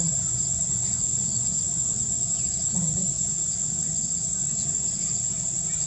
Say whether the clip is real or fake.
fake